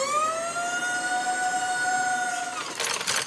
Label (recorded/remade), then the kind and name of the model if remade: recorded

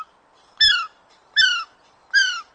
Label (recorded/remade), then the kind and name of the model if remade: recorded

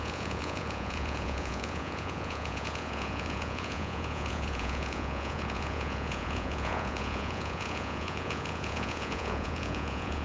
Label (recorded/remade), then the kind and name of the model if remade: remade, vocoder, Vocos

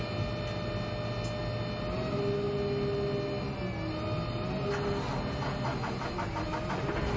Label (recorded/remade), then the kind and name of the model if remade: recorded